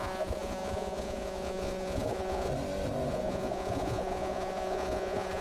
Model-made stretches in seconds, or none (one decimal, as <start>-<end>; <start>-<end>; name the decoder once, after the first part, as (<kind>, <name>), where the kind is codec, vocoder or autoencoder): 0.0-2.5 (vocoder, Vocos); 3.1-5.4